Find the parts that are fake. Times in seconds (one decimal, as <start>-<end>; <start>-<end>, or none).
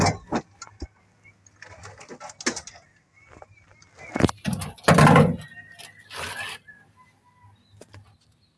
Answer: none